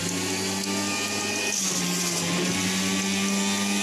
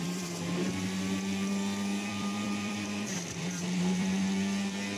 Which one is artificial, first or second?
second